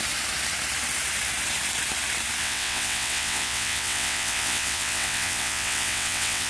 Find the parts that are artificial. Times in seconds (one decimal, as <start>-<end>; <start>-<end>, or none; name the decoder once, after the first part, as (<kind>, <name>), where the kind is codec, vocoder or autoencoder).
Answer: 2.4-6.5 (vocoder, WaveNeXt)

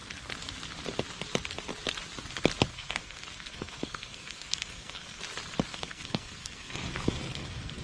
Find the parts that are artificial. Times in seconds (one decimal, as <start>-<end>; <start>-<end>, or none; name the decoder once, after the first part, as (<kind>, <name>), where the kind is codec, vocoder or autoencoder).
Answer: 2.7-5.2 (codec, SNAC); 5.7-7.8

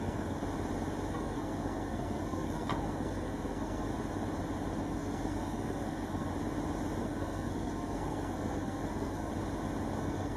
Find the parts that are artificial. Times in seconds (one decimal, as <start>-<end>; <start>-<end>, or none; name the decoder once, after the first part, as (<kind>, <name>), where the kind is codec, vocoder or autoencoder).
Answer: 0.0-0.4 (codec, SNAC); 1.1-3.9; 4.8-6.3; 7.0-9.3; 10.0-10.4

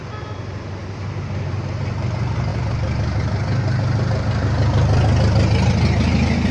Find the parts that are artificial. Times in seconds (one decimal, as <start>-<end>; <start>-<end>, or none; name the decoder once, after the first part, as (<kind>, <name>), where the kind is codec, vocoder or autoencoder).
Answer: none

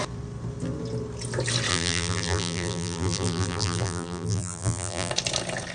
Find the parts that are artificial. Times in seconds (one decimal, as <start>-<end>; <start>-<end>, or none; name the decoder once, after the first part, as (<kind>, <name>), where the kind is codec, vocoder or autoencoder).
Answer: 1.7-5.1 (vocoder, BigVGAN v2)

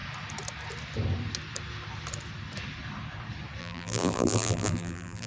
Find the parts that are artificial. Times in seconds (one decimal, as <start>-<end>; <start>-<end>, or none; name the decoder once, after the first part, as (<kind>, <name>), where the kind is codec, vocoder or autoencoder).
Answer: 3.6-5.3 (vocoder, BigVGAN v2)